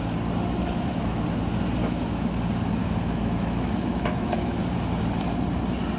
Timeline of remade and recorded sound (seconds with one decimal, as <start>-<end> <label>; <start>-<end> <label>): 0.0-0.6 recorded; 0.6-1.2 remade; 1.2-1.8 recorded; 1.8-2.4 remade; 2.4-2.8 recorded; 2.8-4.6 remade; 4.6-6.0 recorded